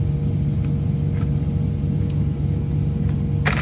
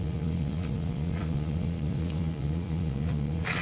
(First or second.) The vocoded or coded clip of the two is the second